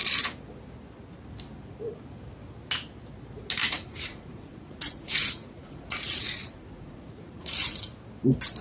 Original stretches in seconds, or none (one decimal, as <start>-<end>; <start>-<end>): 0.0-3.6; 7.9-8.6